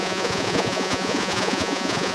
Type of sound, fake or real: fake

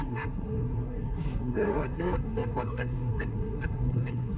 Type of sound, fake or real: fake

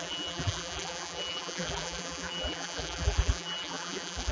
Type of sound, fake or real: fake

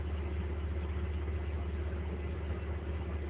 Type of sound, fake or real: real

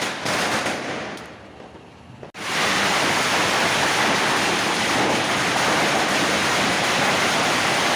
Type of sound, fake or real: real